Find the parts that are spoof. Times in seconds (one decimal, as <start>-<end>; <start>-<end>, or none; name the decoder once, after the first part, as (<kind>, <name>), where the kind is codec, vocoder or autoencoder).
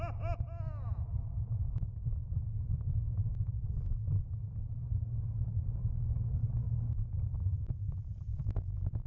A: 8.4-9.1 (vocoder, BigVGAN v2)